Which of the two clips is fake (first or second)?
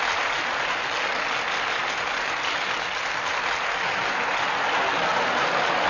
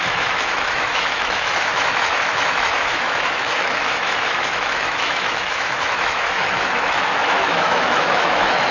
second